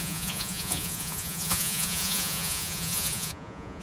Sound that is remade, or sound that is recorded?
remade